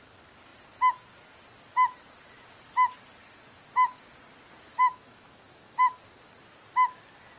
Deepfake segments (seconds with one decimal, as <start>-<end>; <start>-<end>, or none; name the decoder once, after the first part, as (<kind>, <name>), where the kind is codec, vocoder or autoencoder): 4.7-6.0 (autoencoder, DAC-VAE)